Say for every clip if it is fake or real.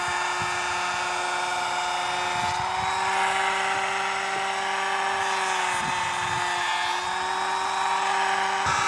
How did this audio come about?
real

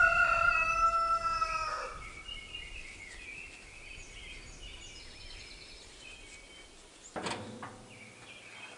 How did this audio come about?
real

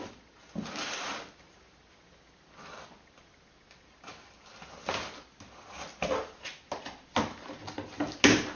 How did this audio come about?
real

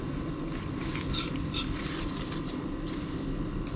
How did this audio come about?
real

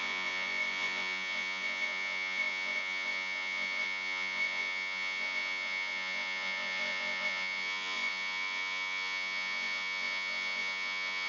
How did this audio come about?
fake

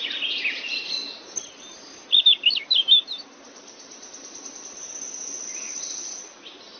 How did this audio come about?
real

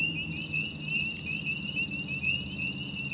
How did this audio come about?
real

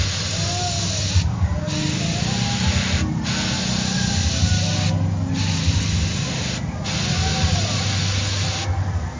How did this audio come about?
real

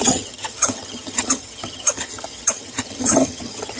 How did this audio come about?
fake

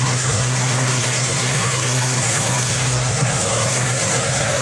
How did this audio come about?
fake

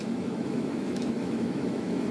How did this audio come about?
fake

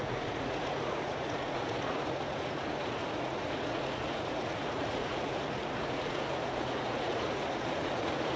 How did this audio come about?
fake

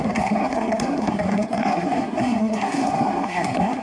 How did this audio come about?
fake